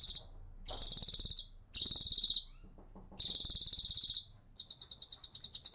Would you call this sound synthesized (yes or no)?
no